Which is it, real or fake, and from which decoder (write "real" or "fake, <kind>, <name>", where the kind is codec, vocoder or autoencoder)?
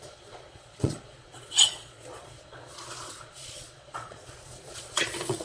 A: fake, vocoder, Vocos